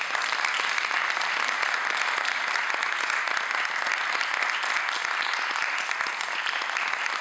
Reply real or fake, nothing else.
real